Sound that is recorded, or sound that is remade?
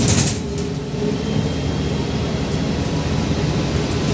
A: recorded